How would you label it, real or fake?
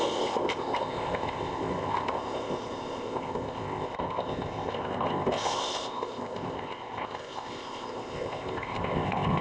fake